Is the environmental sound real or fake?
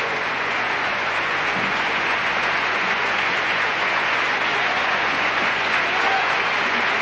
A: fake